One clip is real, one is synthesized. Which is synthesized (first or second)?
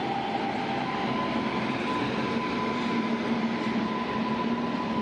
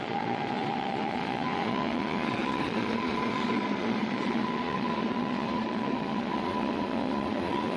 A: second